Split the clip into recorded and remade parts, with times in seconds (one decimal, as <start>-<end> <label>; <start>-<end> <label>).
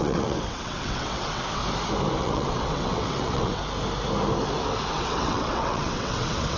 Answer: 0.0-1.6 remade; 1.6-2.2 recorded; 2.2-3.6 remade; 3.6-4.9 recorded; 4.9-6.6 remade